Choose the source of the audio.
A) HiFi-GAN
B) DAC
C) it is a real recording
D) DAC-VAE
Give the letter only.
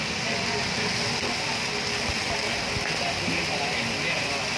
C